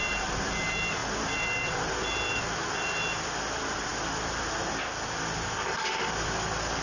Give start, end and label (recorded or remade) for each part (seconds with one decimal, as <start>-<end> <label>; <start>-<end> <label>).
0.0-6.8 recorded